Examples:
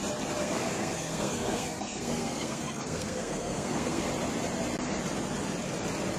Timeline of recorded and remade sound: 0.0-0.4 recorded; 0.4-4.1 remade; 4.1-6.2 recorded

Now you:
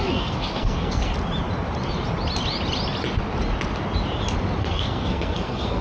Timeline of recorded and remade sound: 0.0-1.1 remade; 1.1-4.6 recorded; 4.6-5.8 remade